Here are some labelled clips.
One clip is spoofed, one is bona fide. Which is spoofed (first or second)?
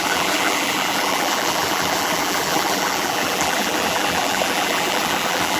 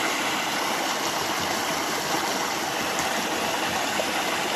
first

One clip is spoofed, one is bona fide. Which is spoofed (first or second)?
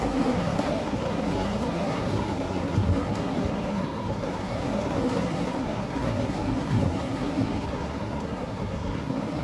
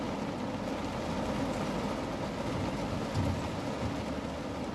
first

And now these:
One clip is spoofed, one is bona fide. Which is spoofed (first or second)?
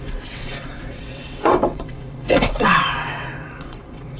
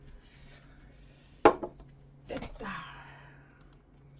first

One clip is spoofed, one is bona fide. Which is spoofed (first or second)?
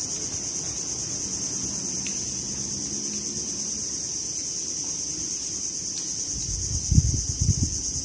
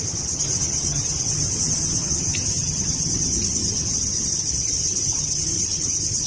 second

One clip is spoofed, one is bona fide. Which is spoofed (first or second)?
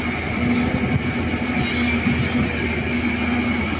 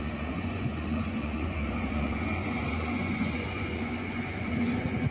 second